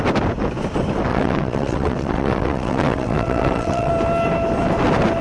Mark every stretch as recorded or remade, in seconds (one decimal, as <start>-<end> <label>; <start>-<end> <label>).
0.0-1.1 recorded; 1.1-3.9 remade; 3.9-5.2 recorded